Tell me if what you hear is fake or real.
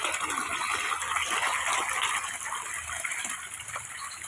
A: real